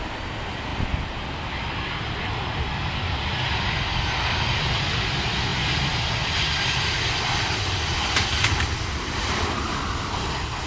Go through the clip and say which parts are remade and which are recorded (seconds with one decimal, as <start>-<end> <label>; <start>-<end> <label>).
0.0-10.7 recorded

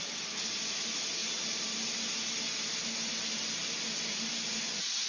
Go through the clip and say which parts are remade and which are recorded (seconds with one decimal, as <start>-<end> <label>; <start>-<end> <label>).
0.0-5.1 recorded

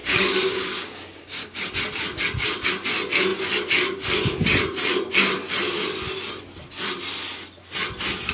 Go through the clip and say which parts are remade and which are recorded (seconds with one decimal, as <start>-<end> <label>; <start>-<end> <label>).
0.0-1.7 remade; 1.7-8.3 recorded

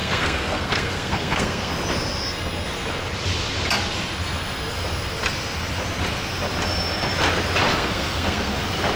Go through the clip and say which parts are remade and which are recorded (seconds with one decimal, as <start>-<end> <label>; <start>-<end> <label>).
0.0-1.7 remade; 1.7-7.7 recorded; 7.7-8.6 remade; 8.6-9.0 recorded

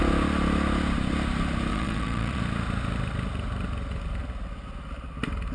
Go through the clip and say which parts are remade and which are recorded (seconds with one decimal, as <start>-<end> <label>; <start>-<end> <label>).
0.0-1.7 recorded; 1.7-2.4 remade; 2.4-5.5 recorded

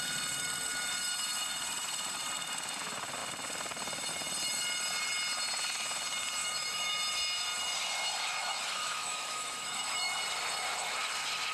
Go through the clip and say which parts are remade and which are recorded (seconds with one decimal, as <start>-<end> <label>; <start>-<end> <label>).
0.0-6.4 recorded; 6.4-7.0 remade; 7.0-8.4 recorded; 8.4-10.2 remade; 10.2-11.5 recorded